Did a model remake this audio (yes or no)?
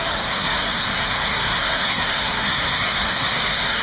yes